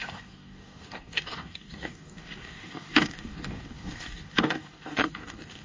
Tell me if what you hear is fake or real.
fake